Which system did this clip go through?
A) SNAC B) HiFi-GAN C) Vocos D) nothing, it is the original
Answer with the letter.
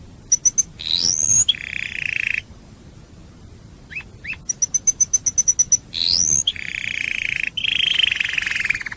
D